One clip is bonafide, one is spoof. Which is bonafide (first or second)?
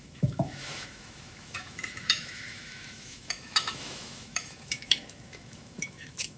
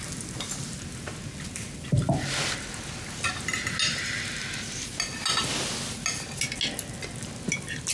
second